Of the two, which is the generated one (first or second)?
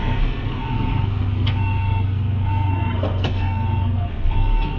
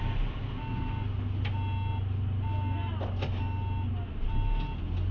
first